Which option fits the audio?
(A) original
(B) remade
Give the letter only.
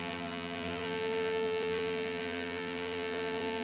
B